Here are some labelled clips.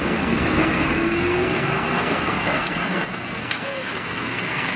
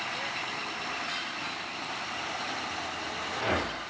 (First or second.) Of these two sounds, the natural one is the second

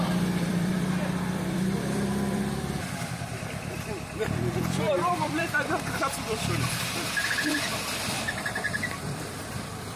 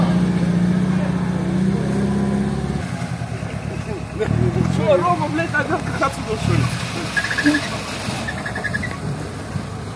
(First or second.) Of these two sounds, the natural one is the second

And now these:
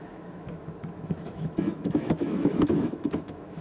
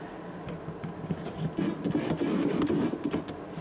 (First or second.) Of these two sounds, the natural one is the second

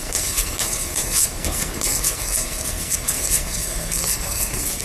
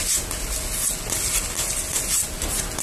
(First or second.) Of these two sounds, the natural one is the second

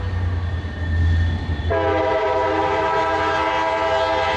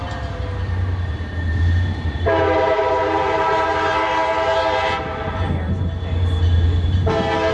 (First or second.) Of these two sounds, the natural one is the first